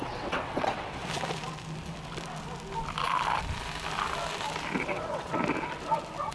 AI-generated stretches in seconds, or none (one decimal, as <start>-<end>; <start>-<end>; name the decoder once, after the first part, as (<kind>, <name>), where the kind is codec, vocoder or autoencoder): 0.0-1.0 (vocoder, WaveNeXt); 4.8-5.3